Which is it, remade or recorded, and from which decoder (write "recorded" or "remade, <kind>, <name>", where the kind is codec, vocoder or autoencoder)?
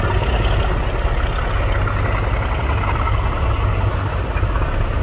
recorded